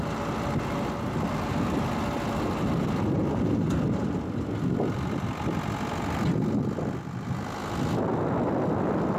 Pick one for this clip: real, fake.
real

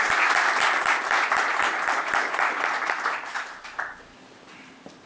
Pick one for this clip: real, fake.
real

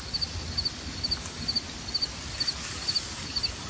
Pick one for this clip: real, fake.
real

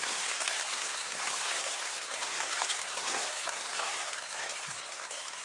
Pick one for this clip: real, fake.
fake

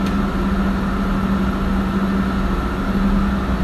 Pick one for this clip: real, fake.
real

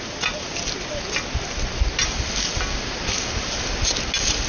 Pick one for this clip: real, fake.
real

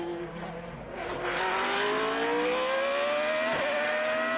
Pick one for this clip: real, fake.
real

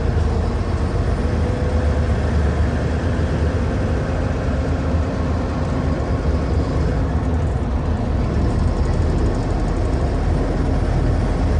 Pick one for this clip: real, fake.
real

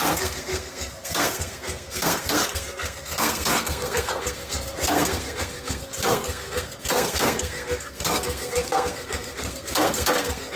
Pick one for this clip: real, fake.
fake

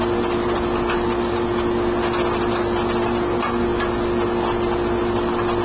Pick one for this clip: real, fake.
real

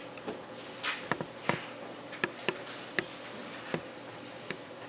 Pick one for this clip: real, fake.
real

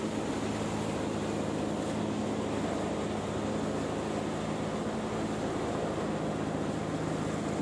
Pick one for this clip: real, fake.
real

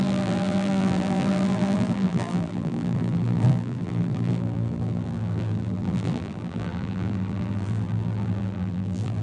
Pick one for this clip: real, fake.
fake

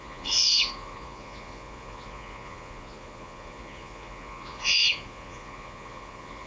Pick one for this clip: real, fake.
fake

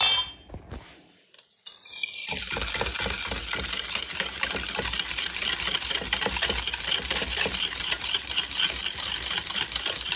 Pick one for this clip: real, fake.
real